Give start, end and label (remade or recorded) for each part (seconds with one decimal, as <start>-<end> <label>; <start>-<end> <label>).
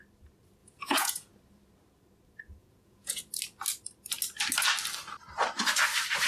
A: 0.0-0.6 recorded; 0.6-1.3 remade; 1.3-2.6 recorded; 2.6-3.2 remade; 3.2-6.3 recorded